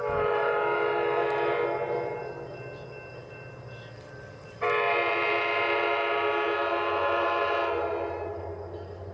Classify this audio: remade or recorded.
recorded